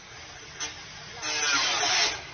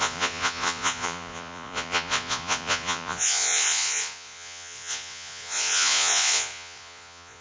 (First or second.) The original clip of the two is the first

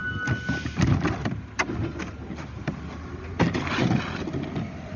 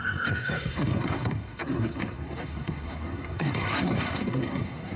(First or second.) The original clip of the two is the first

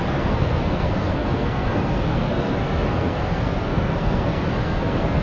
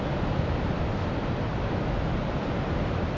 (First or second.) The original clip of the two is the second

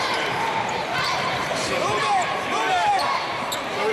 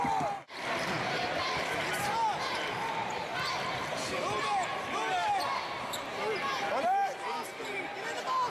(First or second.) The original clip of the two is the second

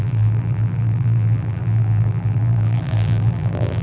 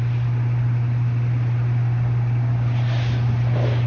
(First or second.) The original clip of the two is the second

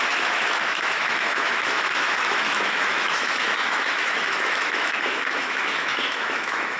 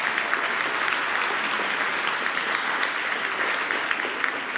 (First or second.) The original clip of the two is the second